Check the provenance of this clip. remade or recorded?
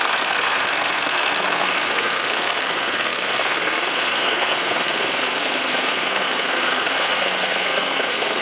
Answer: remade